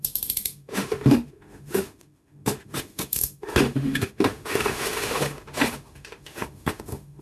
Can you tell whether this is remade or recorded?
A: remade